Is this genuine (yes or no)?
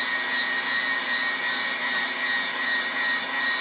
yes